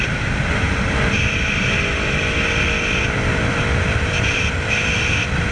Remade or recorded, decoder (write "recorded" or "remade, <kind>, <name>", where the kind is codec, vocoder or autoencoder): recorded